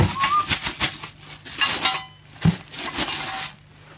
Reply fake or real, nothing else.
real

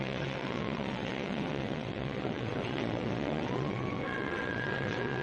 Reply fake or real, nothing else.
fake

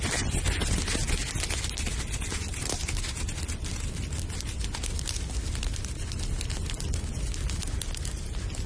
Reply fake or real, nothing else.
real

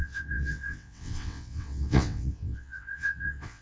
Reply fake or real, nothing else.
fake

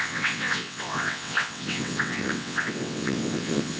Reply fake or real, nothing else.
fake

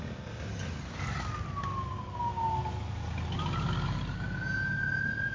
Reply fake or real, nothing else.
real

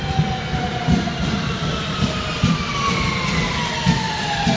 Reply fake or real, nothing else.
real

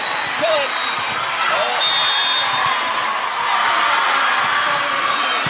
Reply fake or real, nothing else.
real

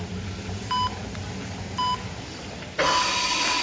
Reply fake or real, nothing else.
real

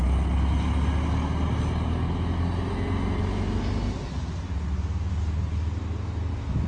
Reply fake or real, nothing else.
real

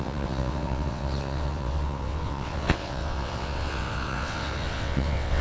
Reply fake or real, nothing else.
fake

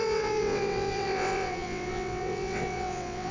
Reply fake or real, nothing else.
fake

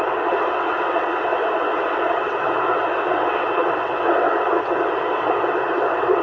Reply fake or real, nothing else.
fake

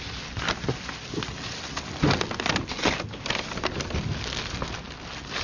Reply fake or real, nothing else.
real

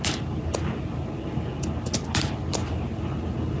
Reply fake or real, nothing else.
real